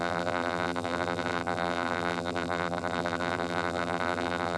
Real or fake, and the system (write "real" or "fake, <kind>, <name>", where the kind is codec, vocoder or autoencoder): fake, vocoder, BigVGAN v2